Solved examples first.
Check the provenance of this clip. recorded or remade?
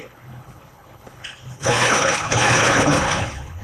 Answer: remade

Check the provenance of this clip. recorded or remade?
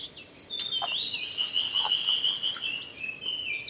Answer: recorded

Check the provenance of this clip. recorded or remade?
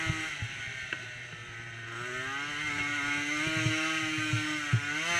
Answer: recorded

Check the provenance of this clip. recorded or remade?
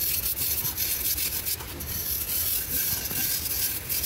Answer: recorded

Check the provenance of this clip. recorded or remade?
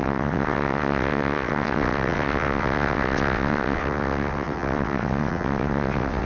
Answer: remade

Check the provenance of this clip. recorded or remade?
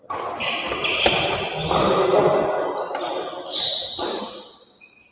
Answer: recorded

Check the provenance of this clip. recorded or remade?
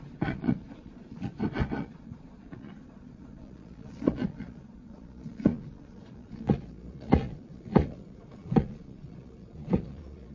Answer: remade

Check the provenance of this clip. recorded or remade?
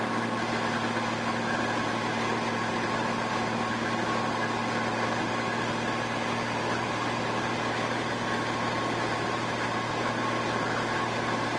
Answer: recorded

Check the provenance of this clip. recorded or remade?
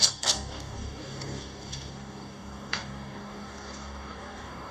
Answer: remade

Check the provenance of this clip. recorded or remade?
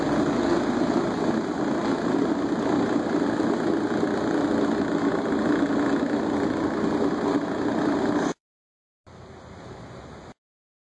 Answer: recorded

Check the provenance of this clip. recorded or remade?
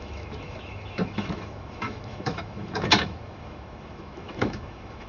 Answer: remade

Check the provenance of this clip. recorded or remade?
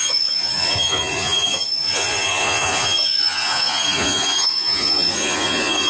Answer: remade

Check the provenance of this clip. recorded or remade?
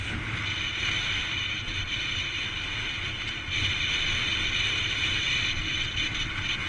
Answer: recorded